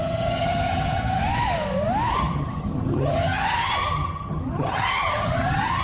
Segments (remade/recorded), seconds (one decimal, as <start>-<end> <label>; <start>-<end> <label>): 0.0-1.2 remade; 1.2-2.2 recorded; 2.2-5.8 remade